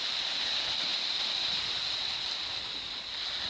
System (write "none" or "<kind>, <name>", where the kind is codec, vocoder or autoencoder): none